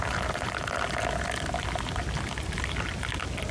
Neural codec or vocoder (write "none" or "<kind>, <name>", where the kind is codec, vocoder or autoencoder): none